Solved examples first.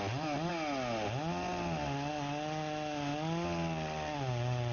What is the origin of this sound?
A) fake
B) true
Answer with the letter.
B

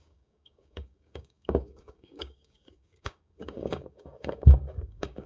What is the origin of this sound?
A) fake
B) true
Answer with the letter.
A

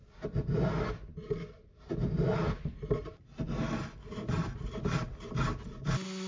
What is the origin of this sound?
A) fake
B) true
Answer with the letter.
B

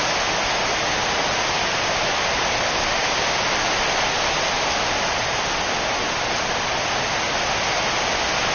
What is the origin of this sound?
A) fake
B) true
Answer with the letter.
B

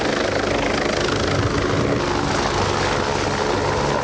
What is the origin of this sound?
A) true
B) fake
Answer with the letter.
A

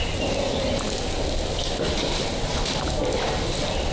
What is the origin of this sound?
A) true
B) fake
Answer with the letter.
A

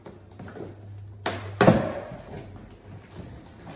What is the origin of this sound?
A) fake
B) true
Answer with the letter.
B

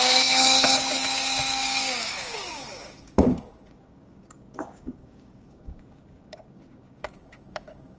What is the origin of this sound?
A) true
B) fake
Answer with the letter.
B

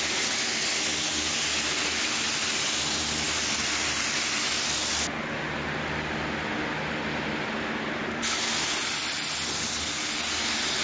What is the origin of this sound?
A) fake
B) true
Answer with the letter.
B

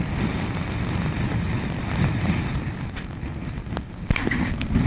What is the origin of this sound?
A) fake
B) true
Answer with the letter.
B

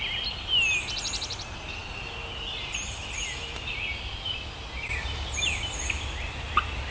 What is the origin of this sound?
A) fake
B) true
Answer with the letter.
B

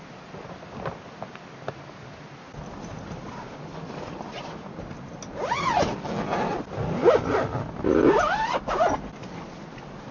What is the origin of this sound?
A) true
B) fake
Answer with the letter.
A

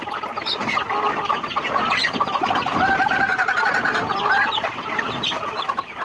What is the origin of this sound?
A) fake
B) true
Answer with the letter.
B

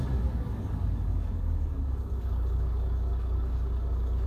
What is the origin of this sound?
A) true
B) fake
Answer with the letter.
B